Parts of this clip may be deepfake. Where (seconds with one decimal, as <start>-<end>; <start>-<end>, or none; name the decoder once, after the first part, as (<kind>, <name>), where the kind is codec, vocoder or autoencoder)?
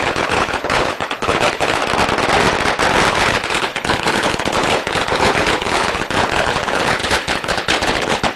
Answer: 0.0-1.8 (codec, HILCodec); 3.1-8.4